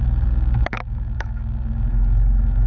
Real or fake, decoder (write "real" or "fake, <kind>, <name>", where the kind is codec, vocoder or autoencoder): fake, autoencoder, DAC-VAE